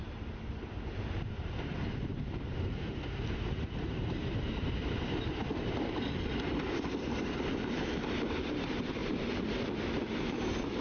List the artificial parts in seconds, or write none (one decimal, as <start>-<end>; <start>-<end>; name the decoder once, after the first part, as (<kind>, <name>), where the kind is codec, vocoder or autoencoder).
1.4-5.4 (vocoder, BigVGAN v2); 6.6-10.8